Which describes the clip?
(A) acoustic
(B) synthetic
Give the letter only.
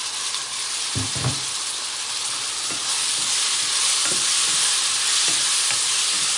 B